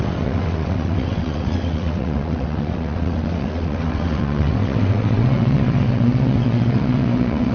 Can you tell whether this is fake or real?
fake